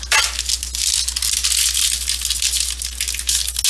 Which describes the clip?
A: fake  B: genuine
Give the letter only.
B